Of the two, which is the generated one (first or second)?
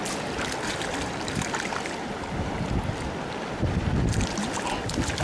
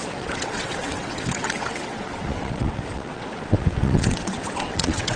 second